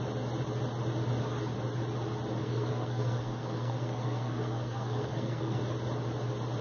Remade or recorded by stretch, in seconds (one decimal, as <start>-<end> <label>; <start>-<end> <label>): 0.0-2.4 recorded; 2.4-5.6 remade; 5.6-6.6 recorded